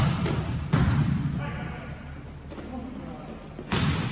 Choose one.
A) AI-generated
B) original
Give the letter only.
B